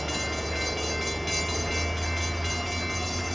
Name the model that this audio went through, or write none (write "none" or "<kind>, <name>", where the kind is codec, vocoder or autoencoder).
none